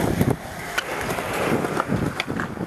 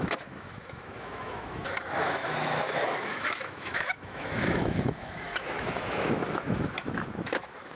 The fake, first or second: second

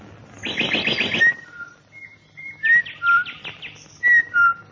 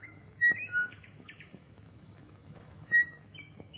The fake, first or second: second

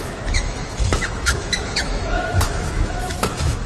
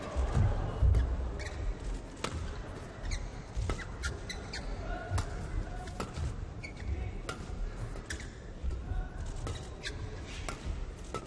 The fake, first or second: first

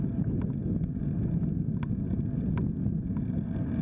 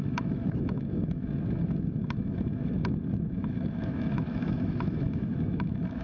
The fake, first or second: second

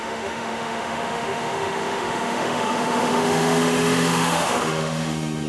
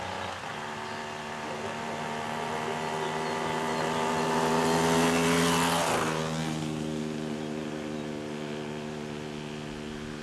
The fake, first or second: first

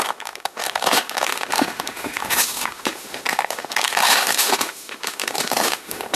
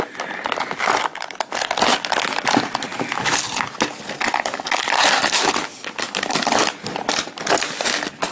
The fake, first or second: first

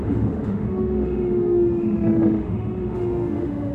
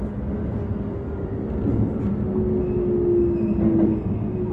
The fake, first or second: first